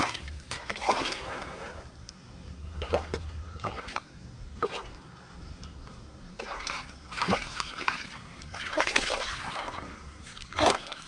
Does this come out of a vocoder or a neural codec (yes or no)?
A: yes